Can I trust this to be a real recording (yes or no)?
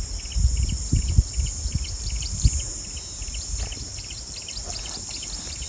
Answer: yes